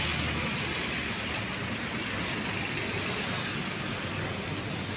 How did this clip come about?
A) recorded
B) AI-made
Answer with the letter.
A